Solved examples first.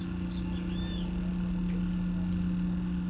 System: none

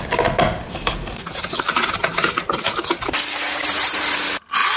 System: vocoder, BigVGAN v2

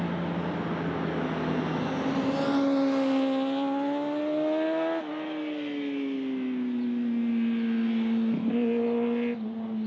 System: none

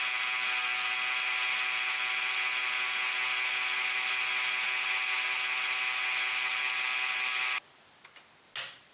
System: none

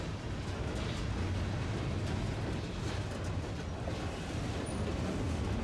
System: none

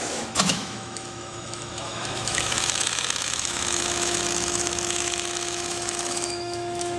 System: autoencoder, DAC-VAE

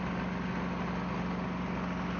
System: none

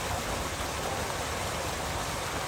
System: none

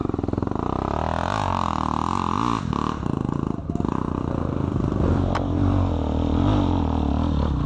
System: none